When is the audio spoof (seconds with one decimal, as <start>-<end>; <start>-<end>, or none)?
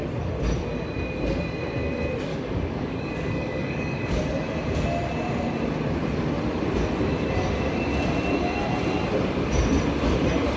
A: 2.3-4.2